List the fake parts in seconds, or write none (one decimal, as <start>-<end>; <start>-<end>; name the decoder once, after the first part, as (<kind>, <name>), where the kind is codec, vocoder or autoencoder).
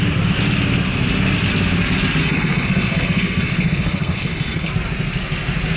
2.2-4.7 (codec, SNAC)